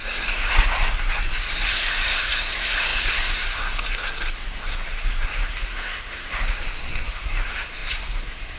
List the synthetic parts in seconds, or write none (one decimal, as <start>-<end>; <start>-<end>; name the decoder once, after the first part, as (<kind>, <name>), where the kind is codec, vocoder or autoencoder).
0.0-8.6 (codec, SNAC)